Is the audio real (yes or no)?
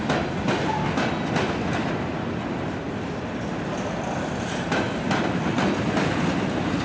yes